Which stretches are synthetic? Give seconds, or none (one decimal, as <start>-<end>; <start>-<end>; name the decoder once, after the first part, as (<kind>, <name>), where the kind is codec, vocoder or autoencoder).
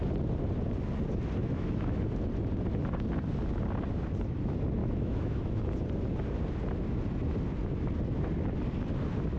1.4-2.0 (autoencoder, DAC-VAE); 4.8-5.6